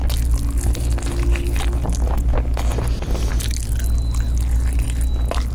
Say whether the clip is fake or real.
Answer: real